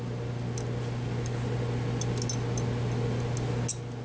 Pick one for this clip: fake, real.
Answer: real